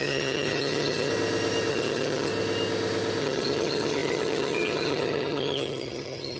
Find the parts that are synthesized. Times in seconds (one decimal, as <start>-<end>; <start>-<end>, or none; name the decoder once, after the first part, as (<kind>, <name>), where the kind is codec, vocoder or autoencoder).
0.0-1.1 (vocoder, HiFi-GAN); 1.7-2.3; 3.2-6.4